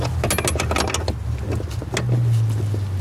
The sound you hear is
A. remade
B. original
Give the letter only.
B